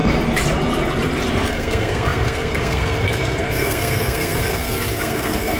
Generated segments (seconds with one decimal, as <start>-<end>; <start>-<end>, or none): 1.3-5.6